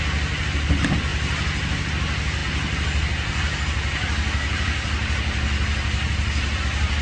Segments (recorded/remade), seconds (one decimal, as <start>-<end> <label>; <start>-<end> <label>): 0.0-7.0 recorded

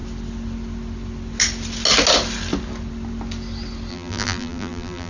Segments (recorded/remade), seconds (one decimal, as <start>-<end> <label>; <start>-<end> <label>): 0.0-3.9 recorded; 3.9-5.1 remade